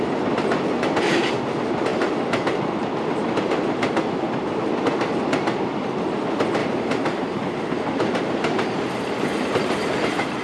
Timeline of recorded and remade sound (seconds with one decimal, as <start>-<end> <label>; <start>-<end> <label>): 0.0-10.4 recorded